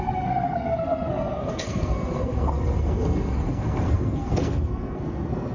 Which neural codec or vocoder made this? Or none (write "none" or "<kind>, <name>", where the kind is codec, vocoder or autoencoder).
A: codec, SNAC